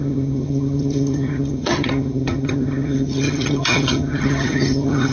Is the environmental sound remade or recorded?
remade